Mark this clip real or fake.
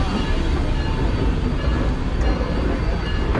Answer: real